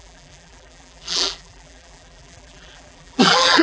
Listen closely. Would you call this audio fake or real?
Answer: fake